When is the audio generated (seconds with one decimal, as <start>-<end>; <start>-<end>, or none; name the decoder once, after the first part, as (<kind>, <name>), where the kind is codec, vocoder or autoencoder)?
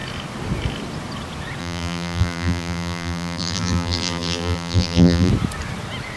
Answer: 1.6-5.3 (vocoder, BigVGAN v2)